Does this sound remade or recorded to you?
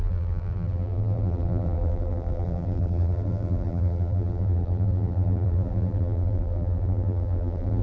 remade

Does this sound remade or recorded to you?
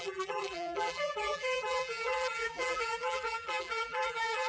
remade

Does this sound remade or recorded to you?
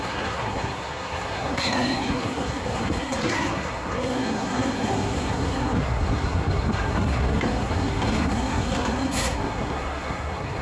remade